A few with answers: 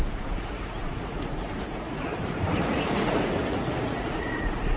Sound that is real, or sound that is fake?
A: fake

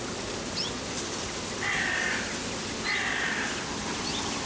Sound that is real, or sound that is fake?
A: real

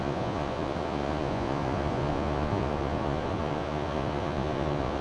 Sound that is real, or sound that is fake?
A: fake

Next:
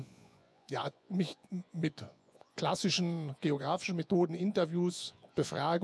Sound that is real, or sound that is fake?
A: fake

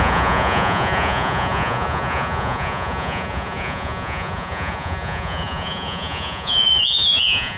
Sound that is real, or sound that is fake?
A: fake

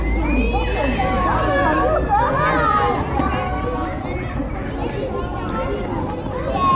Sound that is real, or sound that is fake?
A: real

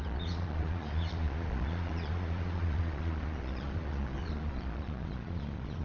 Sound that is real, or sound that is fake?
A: fake